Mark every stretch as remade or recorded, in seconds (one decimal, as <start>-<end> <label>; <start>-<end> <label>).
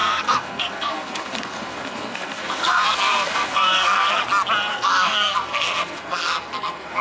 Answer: 0.0-4.2 remade; 4.2-4.7 recorded; 4.7-7.0 remade